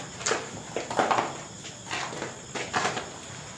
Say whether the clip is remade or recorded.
recorded